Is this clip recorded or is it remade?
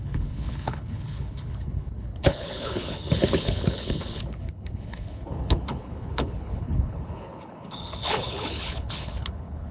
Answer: remade